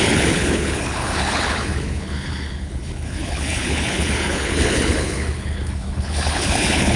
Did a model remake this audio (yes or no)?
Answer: yes